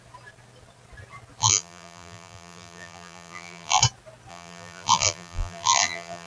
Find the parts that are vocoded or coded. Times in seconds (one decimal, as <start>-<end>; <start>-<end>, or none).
1.4-3.8; 4.3-6.3